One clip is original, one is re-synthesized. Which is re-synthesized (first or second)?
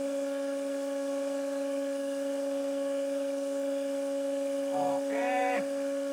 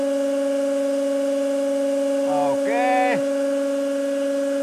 first